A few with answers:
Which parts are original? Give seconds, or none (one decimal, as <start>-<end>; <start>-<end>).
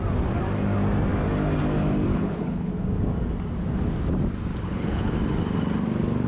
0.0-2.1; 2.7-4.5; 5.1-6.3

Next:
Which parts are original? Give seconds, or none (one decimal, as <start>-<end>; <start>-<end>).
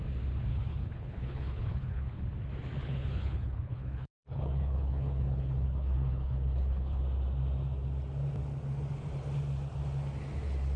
0.0-0.5; 2.2-2.8; 7.0-10.8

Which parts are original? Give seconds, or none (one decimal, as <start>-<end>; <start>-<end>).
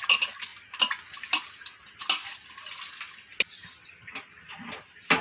0.0-5.2